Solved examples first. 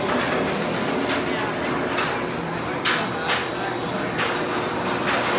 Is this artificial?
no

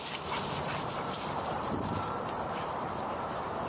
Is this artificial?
yes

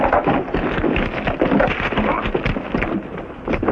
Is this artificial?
no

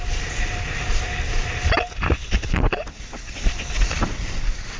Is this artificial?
no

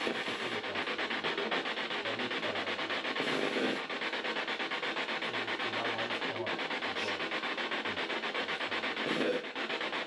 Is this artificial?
no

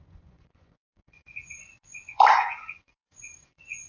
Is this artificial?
yes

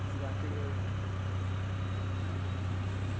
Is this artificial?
no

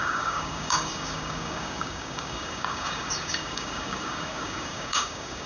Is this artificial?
yes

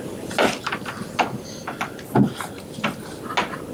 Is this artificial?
no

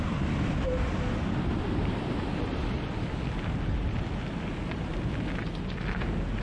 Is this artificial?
no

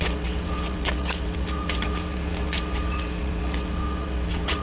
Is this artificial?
yes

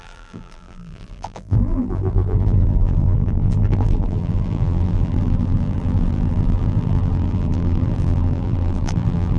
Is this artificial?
yes